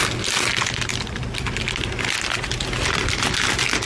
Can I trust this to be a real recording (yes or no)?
yes